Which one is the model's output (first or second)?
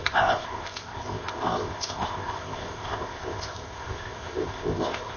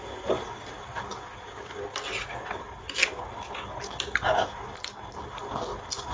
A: first